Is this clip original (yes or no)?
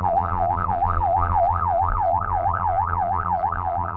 no